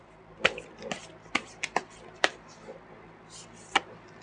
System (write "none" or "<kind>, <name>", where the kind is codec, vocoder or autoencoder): vocoder, BigVGAN v2